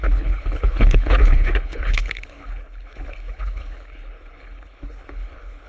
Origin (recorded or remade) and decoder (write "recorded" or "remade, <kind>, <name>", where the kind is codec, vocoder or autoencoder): remade, codec, HILCodec